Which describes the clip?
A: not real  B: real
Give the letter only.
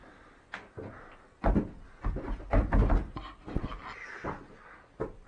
B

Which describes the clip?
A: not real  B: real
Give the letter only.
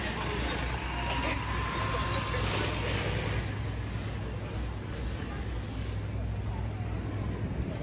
B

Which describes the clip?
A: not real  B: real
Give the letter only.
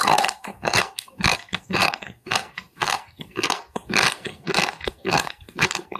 A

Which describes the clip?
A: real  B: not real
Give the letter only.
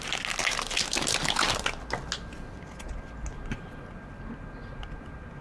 A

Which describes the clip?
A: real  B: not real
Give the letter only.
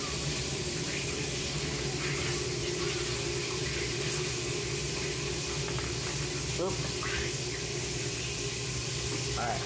A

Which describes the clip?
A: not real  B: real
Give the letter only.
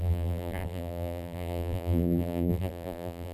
A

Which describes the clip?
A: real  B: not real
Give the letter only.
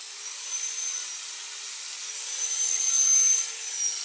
A